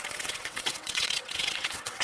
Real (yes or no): no